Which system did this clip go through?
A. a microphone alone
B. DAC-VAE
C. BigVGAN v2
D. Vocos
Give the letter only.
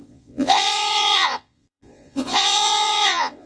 D